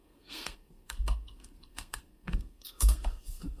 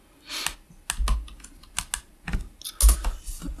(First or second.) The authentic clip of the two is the second